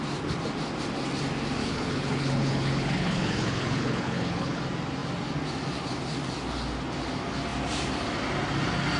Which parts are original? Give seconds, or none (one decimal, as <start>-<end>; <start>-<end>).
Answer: 0.0-1.6; 4.6-9.0